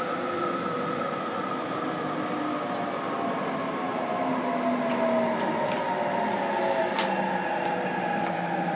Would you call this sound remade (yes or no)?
no